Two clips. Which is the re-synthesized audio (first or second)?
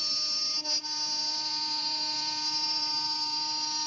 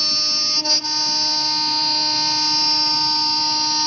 first